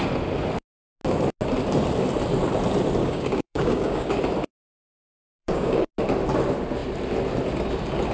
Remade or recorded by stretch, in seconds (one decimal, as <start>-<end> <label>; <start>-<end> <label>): 0.0-3.0 recorded; 3.0-4.1 remade; 4.1-5.4 recorded; 5.4-5.9 remade; 5.9-8.1 recorded